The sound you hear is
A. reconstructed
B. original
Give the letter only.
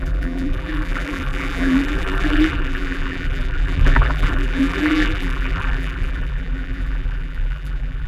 A